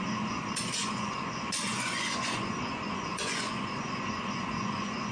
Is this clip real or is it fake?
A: fake